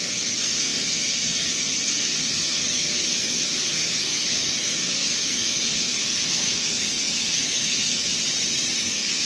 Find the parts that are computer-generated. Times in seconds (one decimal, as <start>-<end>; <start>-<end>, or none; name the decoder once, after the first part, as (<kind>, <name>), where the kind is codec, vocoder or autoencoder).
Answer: 0.0-8.1 (codec, SNAC); 8.8-9.3